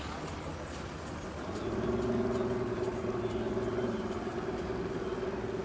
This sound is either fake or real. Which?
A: real